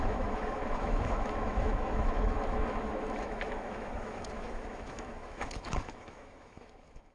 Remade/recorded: remade